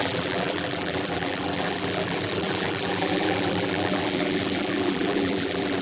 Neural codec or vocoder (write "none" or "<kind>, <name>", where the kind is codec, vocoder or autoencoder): vocoder, BigVGAN v2